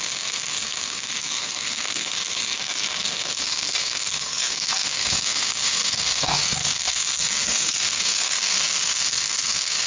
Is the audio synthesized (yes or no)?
yes